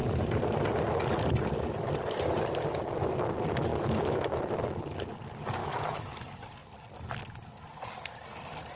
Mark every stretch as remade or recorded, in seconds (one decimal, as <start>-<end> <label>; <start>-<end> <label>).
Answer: 0.0-3.7 recorded; 3.7-4.4 remade; 4.4-5.6 recorded; 5.6-6.1 remade; 6.1-8.8 recorded